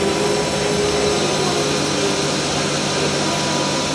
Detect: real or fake real